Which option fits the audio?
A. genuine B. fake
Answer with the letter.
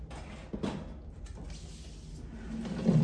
A